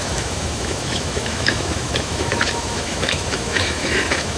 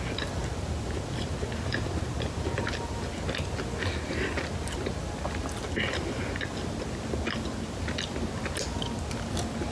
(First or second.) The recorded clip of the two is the second